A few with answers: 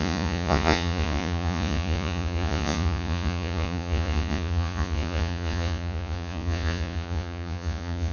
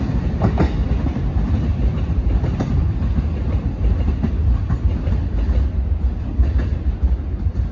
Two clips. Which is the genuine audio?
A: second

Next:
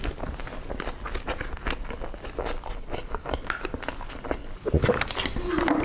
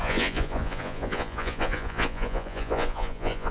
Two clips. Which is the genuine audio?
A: first